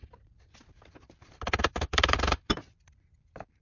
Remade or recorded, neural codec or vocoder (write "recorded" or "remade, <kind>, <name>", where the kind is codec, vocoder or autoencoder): recorded